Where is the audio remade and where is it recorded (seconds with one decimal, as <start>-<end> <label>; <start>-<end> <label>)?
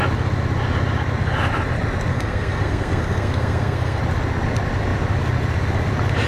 0.0-2.1 recorded; 2.1-4.0 remade; 4.0-6.3 recorded